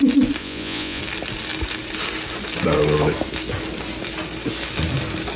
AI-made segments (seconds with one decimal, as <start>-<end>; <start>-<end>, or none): 0.4-1.0